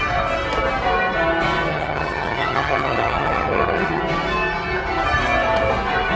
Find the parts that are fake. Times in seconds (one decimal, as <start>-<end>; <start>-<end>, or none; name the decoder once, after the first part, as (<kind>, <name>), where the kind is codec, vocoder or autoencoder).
1.7-4.0 (vocoder, HiFi-GAN)